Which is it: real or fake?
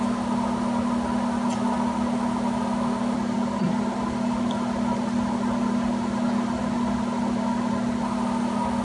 real